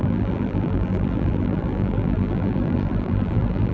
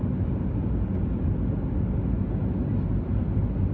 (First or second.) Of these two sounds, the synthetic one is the first